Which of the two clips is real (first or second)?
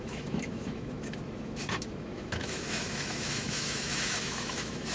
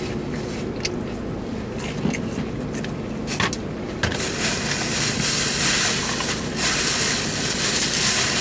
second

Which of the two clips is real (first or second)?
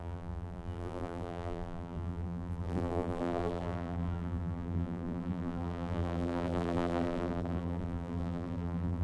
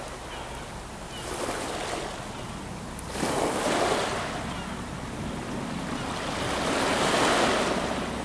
second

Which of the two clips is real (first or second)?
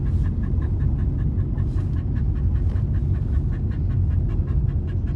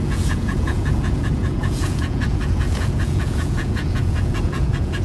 first